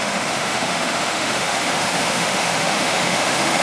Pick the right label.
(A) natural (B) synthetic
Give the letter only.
B